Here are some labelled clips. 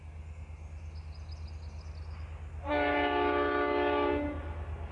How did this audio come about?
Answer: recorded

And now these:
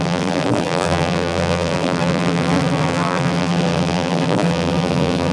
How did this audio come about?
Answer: remade